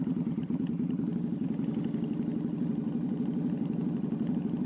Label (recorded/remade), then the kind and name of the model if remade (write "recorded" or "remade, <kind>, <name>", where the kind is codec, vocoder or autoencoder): recorded